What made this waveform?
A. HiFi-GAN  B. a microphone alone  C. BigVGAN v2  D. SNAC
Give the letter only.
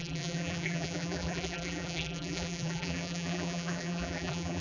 C